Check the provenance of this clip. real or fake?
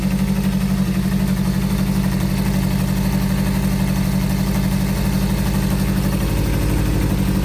real